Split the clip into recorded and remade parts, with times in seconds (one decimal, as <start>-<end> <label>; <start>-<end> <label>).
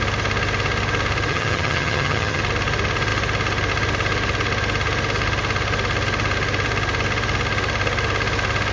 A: 0.0-1.3 recorded; 1.3-2.4 remade; 2.4-8.7 recorded